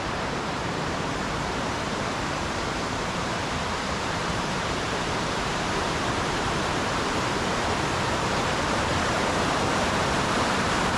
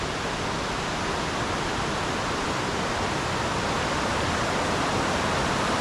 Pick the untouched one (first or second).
second